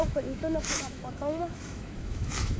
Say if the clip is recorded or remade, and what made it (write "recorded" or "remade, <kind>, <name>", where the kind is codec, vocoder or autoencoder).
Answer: remade, autoencoder, DAC-VAE